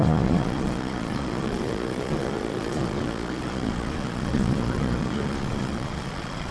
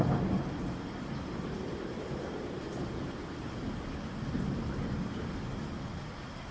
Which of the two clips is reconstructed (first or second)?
first